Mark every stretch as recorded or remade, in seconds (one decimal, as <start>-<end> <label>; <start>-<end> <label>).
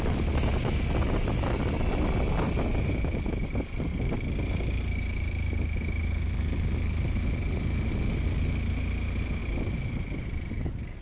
0.0-11.0 recorded